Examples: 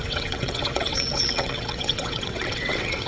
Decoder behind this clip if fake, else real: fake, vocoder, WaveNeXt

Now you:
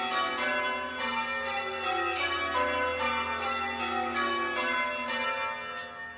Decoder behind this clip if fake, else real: real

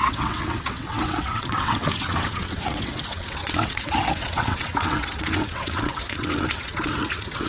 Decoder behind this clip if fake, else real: fake, vocoder, WaveNeXt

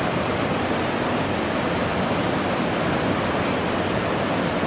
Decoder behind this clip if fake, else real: real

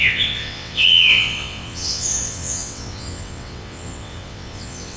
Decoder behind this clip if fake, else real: fake, vocoder, WaveNeXt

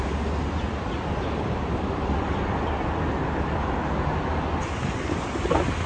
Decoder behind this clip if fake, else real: real